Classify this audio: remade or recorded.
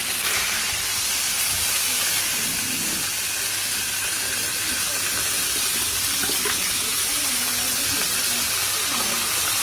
recorded